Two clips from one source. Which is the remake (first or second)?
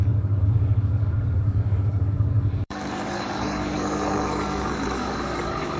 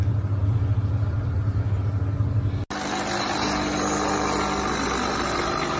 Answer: first